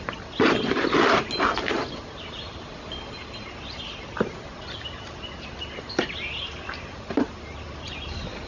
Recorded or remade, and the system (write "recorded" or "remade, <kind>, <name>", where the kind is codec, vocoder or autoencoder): recorded